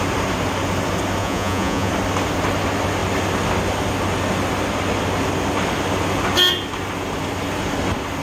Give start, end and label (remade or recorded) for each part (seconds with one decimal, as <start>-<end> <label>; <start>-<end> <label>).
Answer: 0.0-1.2 recorded; 1.2-1.9 remade; 1.9-8.2 recorded